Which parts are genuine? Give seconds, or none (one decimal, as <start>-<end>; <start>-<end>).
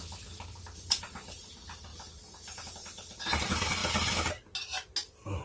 0.0-5.4